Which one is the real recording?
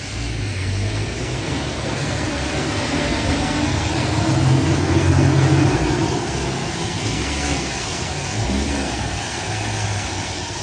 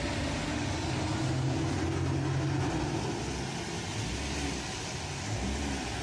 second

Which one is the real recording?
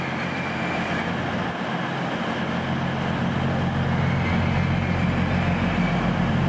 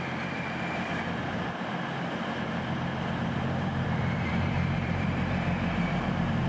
first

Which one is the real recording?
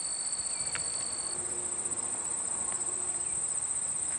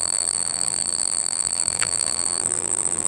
first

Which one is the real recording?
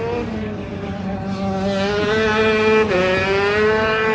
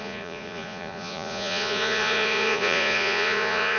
first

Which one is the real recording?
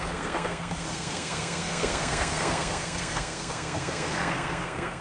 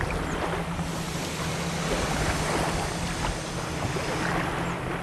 second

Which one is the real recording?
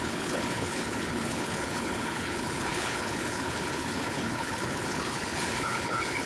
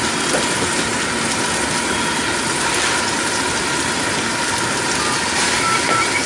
second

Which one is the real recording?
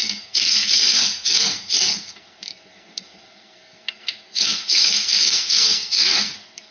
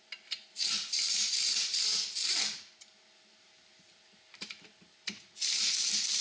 second